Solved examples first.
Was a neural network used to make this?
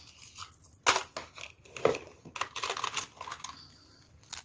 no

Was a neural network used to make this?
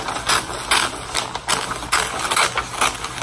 no